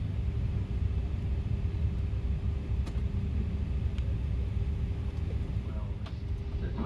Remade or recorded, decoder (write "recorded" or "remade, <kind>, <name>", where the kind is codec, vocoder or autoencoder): recorded